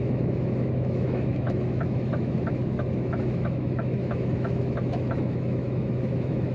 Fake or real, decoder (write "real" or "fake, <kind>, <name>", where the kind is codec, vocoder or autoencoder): fake, autoencoder, DAC-VAE